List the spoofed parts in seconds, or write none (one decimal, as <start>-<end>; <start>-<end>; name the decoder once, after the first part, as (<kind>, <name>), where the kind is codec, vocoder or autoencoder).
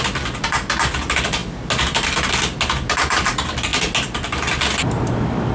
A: none